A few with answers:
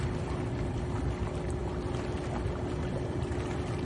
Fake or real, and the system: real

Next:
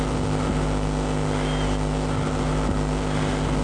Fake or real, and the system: real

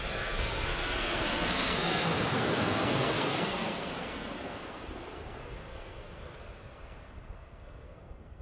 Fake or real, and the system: fake, codec, SNAC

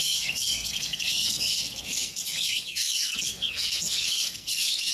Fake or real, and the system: fake, codec, SNAC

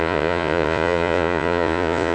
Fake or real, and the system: fake, vocoder, Vocos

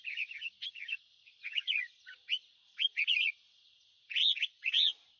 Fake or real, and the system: fake, vocoder, Vocos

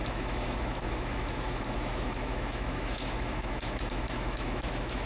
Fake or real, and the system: fake, autoencoder, DAC-VAE